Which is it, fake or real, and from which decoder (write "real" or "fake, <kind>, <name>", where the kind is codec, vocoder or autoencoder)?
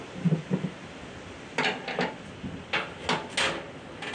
real